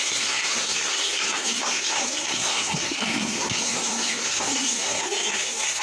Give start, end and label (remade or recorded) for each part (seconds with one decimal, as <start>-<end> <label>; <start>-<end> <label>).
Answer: 0.0-5.8 remade